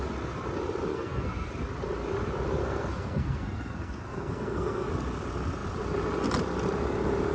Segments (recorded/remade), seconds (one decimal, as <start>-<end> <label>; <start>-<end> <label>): 0.0-0.9 recorded; 0.9-1.5 remade; 1.5-2.6 recorded; 2.6-4.9 remade; 4.9-7.3 recorded